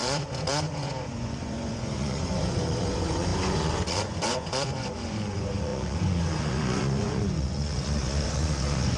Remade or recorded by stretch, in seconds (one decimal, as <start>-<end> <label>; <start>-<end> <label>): 0.0-9.0 remade